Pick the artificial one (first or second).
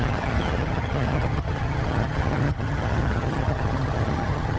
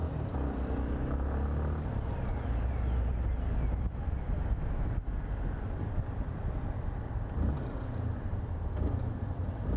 first